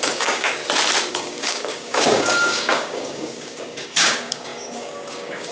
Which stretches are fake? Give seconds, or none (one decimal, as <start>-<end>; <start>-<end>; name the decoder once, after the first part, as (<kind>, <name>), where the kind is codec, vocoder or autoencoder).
0.0-0.6 (codec, DAC); 1.1-5.5

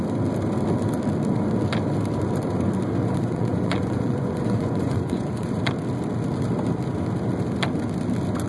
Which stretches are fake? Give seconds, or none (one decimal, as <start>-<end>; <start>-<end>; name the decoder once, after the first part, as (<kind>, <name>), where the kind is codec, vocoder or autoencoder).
3.0-5.5 (vocoder, Vocos)

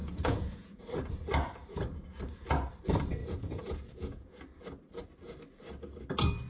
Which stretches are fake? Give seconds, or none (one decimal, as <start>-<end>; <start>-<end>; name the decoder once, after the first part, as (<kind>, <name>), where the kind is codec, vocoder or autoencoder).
0.0-0.8 (vocoder, Vocos); 3.2-4.4

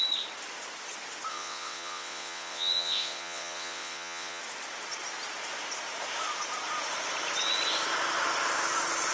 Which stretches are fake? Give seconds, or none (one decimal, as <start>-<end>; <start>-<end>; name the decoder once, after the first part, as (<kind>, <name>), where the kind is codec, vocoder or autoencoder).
1.3-4.4 (vocoder, WaveNeXt)

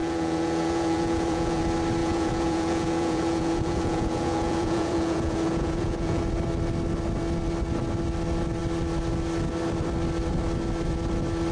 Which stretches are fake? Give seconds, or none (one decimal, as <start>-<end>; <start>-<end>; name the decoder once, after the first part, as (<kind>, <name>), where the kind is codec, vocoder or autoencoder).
0.0-1.6 (vocoder, Vocos); 2.0-6.2

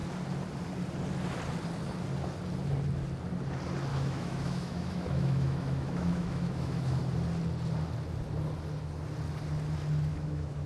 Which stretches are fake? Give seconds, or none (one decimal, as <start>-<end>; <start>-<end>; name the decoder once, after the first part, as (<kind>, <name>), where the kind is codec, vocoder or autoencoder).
3.9-7.0 (autoencoder, DAC-VAE); 10.1-10.7

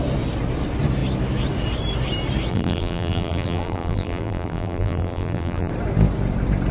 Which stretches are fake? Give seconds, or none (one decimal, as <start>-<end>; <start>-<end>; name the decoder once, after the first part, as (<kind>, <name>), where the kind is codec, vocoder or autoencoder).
2.5-5.7 (vocoder, BigVGAN v2)

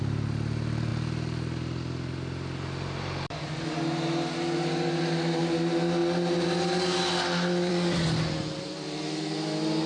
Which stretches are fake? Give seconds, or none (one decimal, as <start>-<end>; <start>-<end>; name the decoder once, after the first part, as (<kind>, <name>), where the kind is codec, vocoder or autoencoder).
none